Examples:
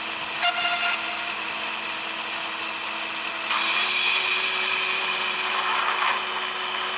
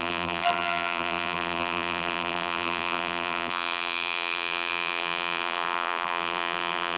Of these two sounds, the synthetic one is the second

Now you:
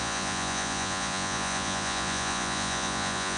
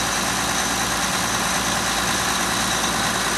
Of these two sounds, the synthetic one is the first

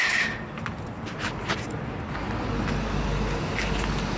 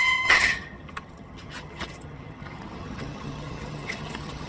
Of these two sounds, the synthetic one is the second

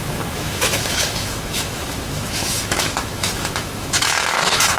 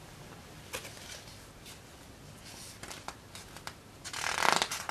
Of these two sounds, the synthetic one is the first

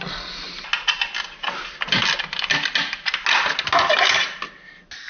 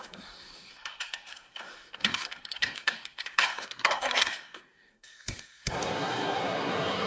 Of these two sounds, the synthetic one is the second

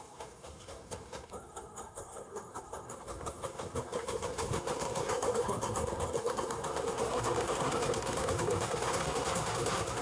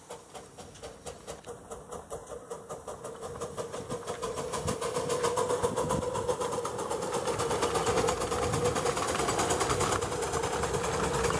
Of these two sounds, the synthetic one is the first